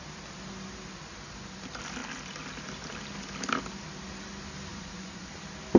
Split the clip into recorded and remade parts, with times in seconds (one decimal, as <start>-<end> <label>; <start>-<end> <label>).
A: 0.0-4.7 recorded; 4.7-5.3 remade; 5.3-5.8 recorded